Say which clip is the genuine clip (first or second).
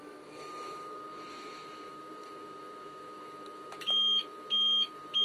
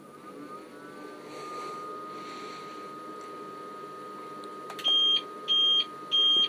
second